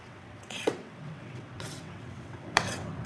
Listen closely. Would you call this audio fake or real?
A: fake